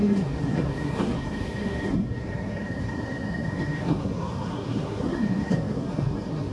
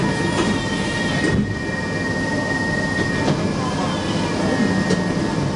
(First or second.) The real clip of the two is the second